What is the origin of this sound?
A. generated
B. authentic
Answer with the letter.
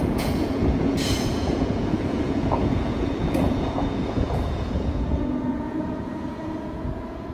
A